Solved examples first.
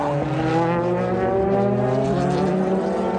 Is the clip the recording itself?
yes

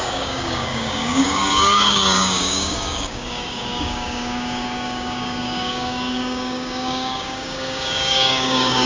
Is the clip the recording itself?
no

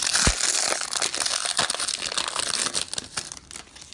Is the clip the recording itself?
yes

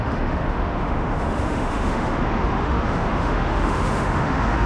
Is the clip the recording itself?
no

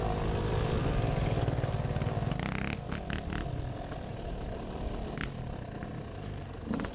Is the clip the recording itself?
yes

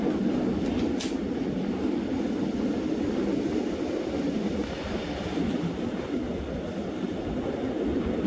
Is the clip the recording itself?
yes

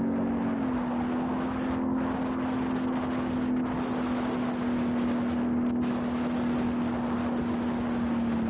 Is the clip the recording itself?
yes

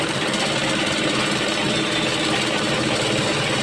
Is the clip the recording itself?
yes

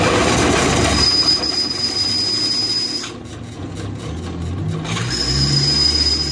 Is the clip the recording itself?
yes